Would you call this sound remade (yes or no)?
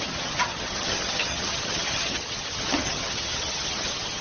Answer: yes